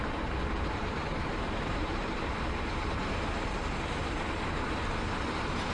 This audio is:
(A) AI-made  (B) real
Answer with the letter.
A